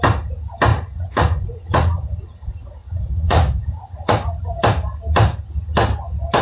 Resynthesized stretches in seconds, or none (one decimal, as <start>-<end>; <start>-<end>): 0.7-4.5